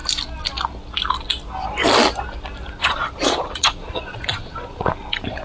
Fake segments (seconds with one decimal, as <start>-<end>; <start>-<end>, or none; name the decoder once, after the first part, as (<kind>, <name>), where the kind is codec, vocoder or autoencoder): 2.8-4.9 (vocoder, Vocos)